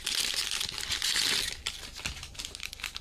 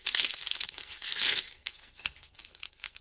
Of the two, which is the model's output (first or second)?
second